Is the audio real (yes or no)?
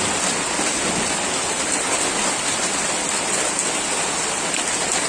yes